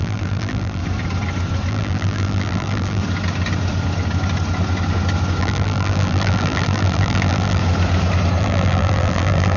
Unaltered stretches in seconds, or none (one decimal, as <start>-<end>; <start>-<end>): 0.8-1.7; 3.0-5.4; 7.6-8.4